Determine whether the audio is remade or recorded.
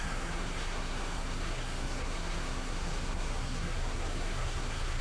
remade